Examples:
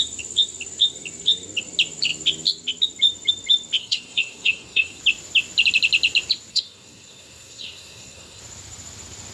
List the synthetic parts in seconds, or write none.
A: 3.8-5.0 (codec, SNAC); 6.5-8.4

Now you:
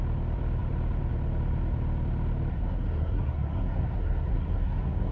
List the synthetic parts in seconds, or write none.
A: 2.5-5.1 (codec, SNAC)

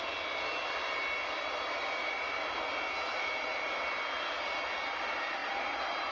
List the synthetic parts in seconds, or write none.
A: none

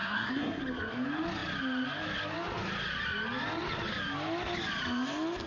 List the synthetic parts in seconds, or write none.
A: 0.0-0.6 (codec, SNAC)

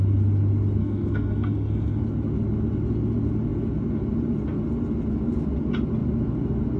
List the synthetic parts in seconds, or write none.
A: 0.8-2.0 (codec, SNAC)

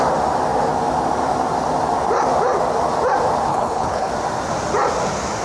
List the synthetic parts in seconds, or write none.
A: 3.5-4.1 (codec, HILCodec)